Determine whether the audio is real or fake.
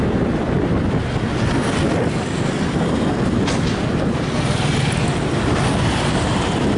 real